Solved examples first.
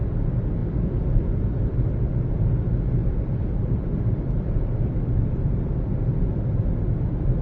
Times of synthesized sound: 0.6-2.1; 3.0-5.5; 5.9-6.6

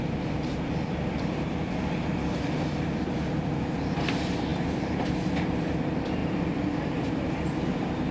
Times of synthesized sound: 0.0-8.1